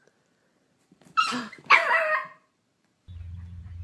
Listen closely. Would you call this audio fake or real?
fake